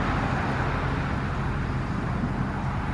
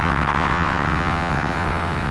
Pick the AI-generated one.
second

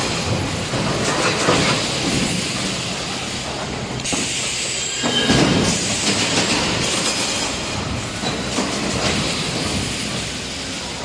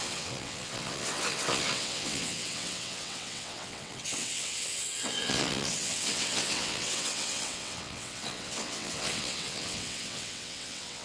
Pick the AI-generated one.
second